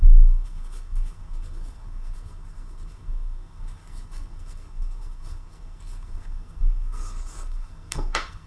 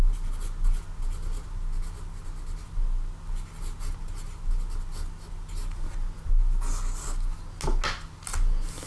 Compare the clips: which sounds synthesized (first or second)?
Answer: first